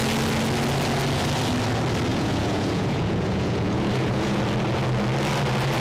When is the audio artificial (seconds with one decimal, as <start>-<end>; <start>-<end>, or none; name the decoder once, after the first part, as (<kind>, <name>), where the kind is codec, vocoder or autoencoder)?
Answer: 2.1-4.4 (vocoder, Vocos)